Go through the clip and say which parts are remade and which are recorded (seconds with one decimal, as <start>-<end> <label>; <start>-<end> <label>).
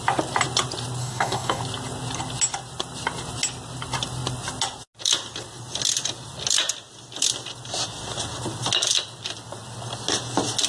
0.0-1.0 recorded; 1.0-1.6 remade; 1.6-10.7 recorded